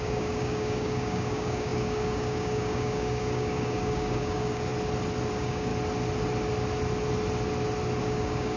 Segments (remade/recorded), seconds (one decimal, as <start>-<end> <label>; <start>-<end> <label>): 0.0-4.7 remade; 4.7-5.3 recorded; 5.3-5.7 remade; 5.7-8.0 recorded; 8.0-8.6 remade